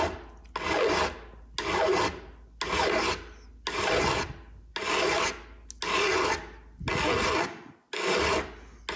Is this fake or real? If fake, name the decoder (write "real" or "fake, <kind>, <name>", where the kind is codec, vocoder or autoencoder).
real